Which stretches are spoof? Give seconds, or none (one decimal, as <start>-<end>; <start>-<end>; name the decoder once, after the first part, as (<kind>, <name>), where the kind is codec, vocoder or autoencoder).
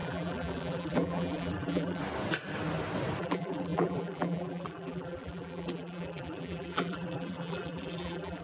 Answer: 0.0-2.0 (vocoder, BigVGAN v2); 3.2-8.4